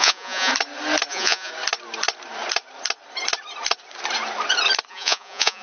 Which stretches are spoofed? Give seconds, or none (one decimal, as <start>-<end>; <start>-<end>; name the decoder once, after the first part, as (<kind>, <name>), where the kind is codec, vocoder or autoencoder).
0.0-0.5 (vocoder, Vocos); 1.1-1.5; 4.9-5.6